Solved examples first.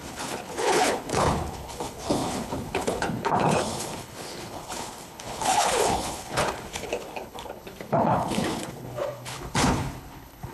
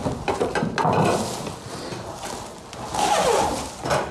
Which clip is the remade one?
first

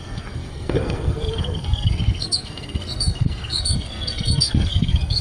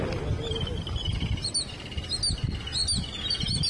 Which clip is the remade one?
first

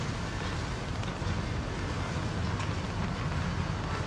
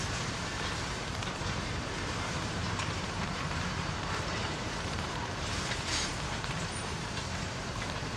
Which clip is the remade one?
second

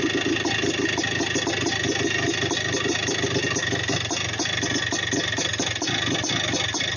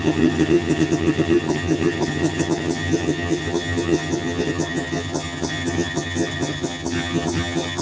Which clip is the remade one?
second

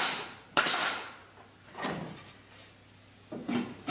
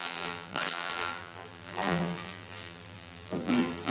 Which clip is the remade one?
second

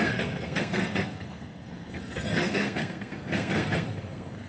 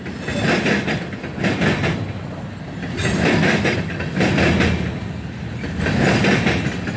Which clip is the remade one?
first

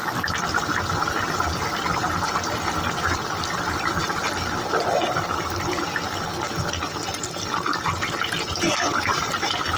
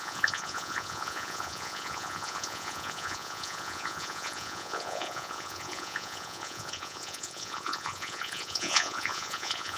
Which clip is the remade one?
second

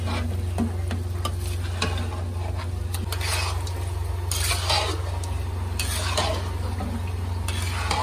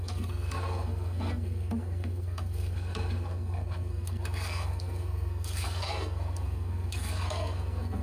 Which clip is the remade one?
second